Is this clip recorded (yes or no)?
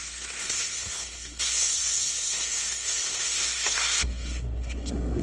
no